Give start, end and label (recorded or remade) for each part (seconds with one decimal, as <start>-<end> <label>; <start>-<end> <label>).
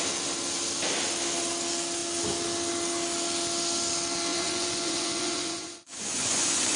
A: 0.0-4.3 recorded; 4.3-6.8 remade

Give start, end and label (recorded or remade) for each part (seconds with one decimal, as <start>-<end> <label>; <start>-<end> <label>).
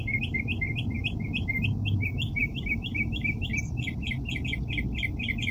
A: 0.0-2.4 recorded; 2.4-3.5 remade; 3.5-5.5 recorded